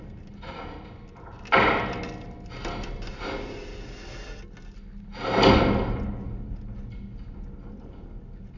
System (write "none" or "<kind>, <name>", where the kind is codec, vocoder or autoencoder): none